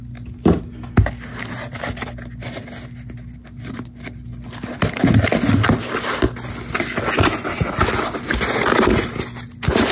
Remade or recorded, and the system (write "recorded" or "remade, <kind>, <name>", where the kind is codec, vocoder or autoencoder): recorded